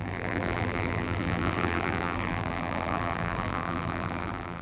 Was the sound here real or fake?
fake